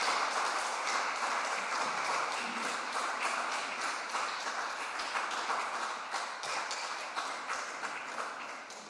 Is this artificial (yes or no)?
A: no